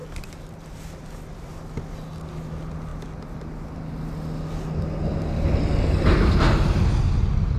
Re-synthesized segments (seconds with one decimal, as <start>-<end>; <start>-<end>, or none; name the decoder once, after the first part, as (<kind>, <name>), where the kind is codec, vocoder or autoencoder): none